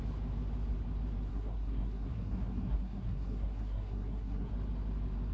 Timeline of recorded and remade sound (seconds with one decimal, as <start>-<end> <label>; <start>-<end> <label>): 0.0-1.3 recorded; 1.3-4.5 remade; 4.5-5.3 recorded